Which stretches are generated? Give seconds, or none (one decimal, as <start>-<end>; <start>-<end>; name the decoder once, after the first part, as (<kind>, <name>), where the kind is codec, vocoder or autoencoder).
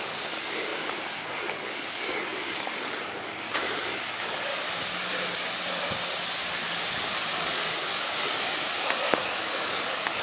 0.0-0.7 (codec, DAC); 1.4-4.5; 7.3-10.2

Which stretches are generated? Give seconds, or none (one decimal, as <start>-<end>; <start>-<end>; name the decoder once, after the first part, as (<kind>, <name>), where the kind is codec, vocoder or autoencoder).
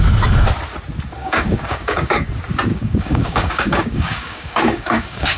1.2-2.3 (codec, DAC); 2.7-5.4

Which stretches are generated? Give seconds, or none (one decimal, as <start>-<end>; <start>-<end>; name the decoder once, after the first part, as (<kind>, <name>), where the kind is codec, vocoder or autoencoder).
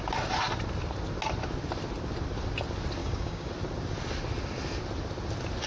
3.0-3.5 (codec, DAC)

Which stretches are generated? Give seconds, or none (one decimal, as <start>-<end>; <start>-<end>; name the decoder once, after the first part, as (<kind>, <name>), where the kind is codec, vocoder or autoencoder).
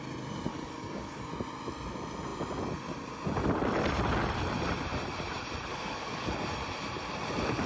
0.5-1.3 (codec, DAC); 5.7-6.3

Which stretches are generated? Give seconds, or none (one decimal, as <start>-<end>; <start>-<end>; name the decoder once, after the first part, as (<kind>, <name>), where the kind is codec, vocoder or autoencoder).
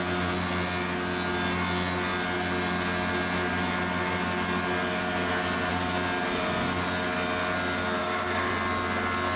8.0-8.5 (codec, DAC)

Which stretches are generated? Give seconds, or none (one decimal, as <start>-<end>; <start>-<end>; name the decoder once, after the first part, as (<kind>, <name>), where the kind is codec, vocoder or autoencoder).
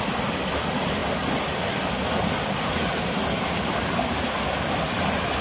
none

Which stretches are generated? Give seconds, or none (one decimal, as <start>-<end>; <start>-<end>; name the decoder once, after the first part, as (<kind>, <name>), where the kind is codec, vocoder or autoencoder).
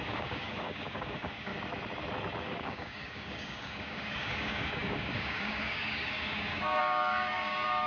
0.0-1.5 (codec, DAC); 2.4-7.9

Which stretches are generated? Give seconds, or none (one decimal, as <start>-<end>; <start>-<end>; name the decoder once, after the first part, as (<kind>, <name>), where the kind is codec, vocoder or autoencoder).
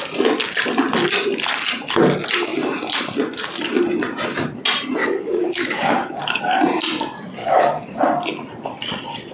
5.0-6.4 (codec, DAC); 7.4-8.0